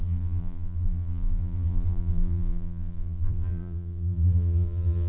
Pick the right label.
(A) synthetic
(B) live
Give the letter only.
A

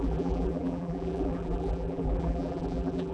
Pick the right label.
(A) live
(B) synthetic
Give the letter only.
B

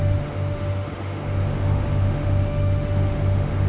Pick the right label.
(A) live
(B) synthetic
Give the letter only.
B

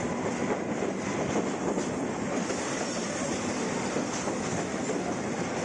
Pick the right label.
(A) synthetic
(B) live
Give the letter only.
B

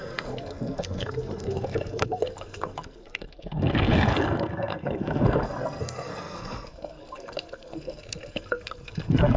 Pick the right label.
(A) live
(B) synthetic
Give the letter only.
B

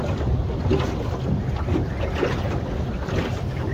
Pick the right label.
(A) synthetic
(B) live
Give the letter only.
B